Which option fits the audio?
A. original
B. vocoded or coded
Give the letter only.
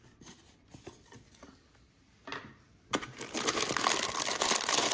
A